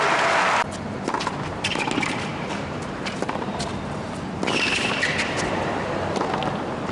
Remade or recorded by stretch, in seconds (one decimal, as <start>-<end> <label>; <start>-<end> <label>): 0.0-2.3 recorded; 2.3-3.5 remade; 3.5-6.9 recorded